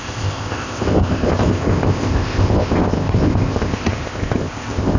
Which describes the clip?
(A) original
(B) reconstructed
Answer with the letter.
B